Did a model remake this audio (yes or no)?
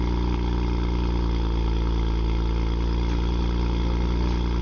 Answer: no